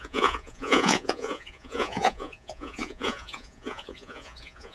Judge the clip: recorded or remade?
remade